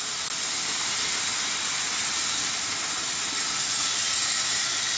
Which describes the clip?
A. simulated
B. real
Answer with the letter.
B